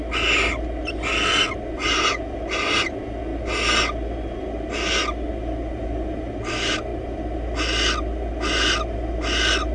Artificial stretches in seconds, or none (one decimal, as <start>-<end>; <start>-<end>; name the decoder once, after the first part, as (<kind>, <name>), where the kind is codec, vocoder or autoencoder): none